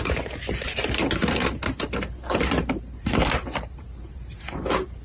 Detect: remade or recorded remade